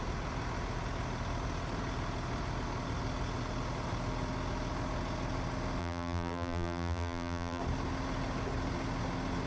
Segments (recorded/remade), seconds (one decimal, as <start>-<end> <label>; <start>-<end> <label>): 0.0-5.8 recorded; 5.8-7.6 remade; 7.6-9.5 recorded